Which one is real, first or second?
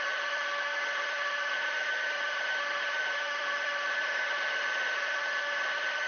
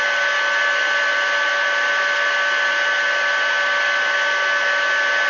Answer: second